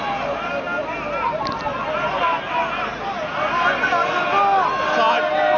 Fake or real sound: real